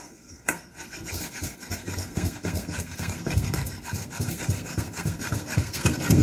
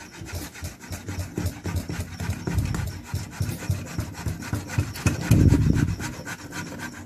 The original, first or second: second